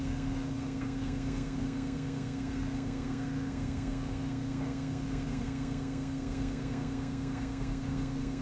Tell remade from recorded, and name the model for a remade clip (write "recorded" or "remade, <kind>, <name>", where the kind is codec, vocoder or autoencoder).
remade, codec, SNAC